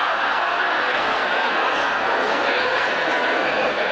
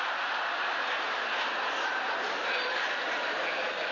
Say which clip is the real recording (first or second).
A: second